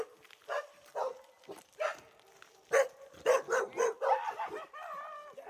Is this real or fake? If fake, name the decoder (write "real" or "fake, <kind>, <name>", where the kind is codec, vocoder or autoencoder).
real